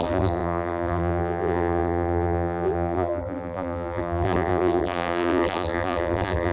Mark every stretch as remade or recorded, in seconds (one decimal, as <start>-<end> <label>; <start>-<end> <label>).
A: 0.0-6.5 remade